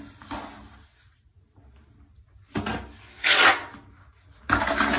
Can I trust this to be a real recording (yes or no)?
yes